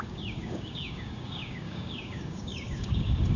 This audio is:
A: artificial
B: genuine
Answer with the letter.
A